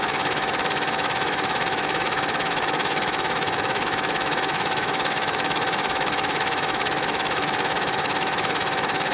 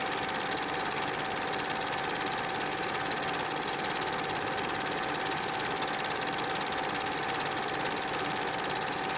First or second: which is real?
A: second